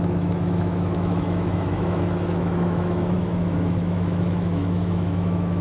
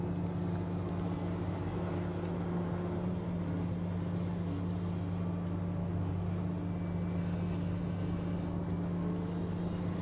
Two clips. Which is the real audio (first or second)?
second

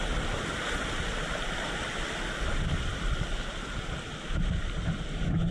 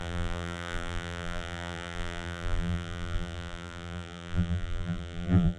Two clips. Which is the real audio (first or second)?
first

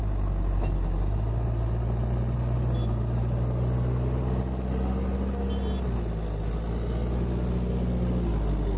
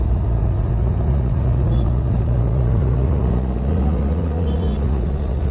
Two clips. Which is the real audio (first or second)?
first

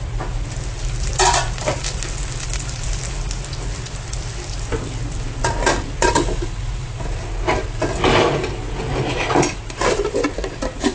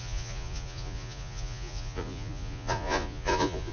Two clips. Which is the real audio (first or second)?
first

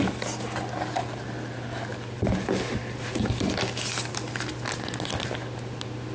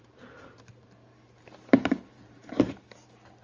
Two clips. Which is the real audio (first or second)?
first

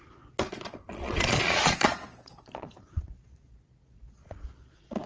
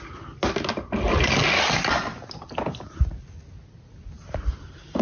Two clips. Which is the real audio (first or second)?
second